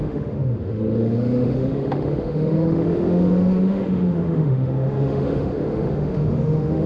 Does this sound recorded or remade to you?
remade